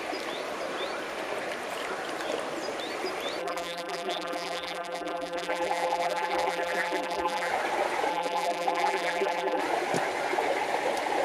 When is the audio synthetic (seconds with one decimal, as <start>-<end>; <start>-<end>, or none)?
3.4-7.5; 8.1-9.6